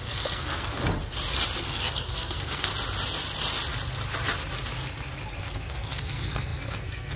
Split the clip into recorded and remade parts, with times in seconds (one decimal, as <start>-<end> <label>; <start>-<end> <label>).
0.0-0.8 remade; 0.8-1.6 recorded; 1.6-2.7 remade; 2.7-5.4 recorded; 5.4-7.2 remade